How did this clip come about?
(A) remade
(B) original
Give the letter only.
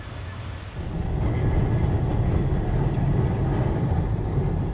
B